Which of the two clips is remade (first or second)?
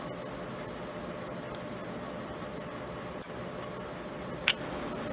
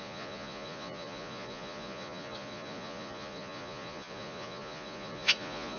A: second